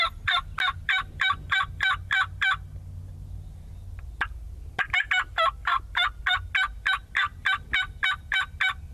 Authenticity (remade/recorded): recorded